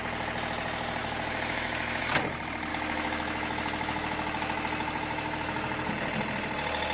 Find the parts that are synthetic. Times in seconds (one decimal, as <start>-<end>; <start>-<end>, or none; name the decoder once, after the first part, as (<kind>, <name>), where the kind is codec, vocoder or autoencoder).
1.0-2.0 (autoencoder, DAC-VAE); 2.7-5.9